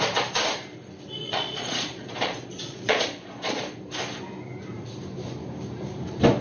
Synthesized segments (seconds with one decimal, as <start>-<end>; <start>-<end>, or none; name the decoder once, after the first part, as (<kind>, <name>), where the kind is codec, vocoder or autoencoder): 1.2-3.6 (vocoder, Vocos)

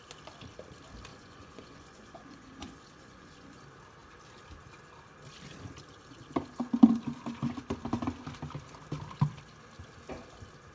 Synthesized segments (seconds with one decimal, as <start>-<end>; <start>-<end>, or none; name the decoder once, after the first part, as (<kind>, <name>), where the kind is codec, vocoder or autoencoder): 1.1-3.6 (vocoder, Vocos)

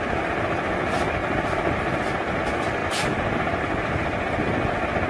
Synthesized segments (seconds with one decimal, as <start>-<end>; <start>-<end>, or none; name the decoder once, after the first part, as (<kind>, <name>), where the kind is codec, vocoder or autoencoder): none

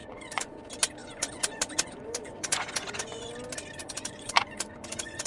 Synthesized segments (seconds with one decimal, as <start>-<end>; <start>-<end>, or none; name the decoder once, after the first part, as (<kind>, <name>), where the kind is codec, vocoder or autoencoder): 0.0-0.6 (vocoder, Vocos); 1.0-3.3; 3.8-5.3

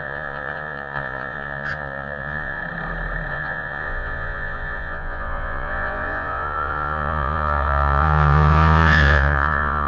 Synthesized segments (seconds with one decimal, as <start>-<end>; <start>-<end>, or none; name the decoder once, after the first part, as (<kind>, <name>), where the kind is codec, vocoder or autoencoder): 0.0-2.6 (vocoder, Vocos); 3.3-9.9

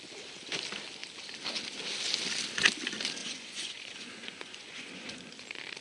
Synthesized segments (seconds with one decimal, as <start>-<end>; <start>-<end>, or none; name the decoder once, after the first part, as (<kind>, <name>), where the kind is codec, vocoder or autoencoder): 3.2-5.3 (vocoder, Vocos)